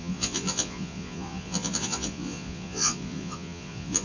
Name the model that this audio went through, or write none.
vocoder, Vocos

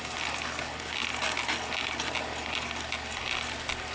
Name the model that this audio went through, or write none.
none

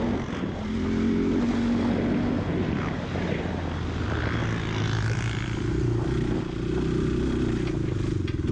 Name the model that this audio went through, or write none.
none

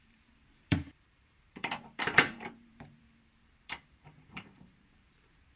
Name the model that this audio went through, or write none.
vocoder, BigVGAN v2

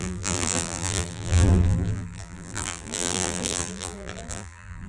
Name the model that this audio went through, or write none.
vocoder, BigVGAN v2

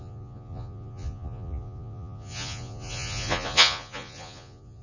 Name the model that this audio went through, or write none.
vocoder, Vocos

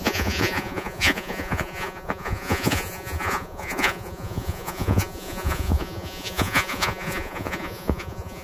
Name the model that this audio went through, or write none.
vocoder, Vocos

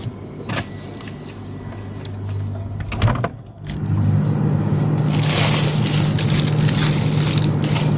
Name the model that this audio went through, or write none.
none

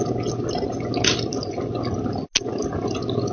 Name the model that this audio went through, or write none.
none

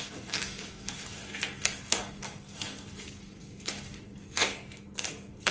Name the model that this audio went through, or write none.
codec, SNAC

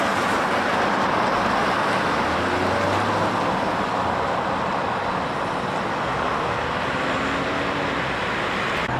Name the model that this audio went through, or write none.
none